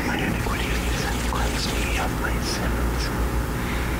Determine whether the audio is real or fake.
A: real